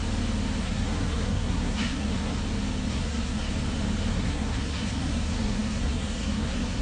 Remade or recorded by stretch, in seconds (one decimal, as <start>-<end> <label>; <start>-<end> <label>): 0.0-0.6 recorded; 0.6-2.4 remade; 2.4-2.9 recorded; 2.9-3.5 remade; 3.5-4.1 recorded; 4.1-6.8 remade